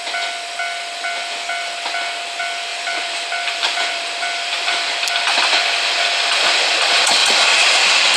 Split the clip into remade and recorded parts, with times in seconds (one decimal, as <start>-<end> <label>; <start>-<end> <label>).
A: 0.0-2.7 recorded; 2.7-5.1 remade; 5.1-7.2 recorded; 7.2-8.2 remade